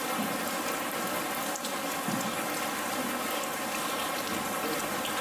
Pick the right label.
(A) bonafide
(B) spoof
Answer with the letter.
A